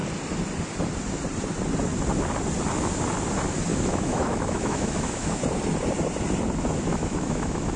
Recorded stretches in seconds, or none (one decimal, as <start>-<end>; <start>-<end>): 0.0-3.7; 5.4-6.9